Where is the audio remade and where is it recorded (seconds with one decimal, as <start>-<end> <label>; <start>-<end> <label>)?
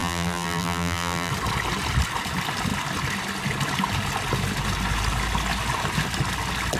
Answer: 0.0-1.3 remade; 1.3-6.8 recorded